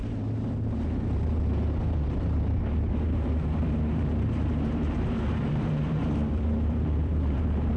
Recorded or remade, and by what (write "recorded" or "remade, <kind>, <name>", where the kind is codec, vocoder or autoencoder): remade, vocoder, BigVGAN v2